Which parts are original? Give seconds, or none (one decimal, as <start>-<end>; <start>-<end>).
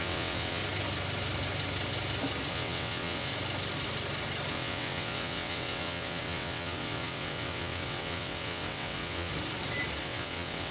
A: 0.6-2.5; 3.3-4.5; 9.3-10.0